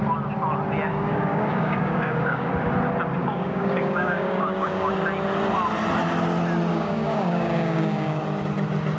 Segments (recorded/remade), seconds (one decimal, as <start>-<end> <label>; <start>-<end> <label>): 0.0-0.9 recorded; 0.9-2.5 remade; 2.5-3.2 recorded; 3.2-4.9 remade; 4.9-6.7 recorded; 6.7-8.2 remade; 8.2-9.0 recorded